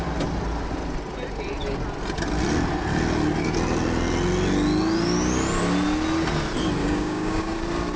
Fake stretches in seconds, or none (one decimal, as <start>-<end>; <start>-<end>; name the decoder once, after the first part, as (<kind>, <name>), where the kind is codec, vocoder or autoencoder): 6.8-7.6 (codec, DAC)